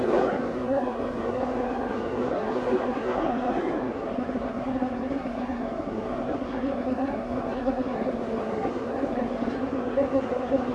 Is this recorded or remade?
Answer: remade